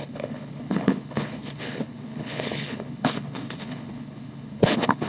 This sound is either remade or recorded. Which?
remade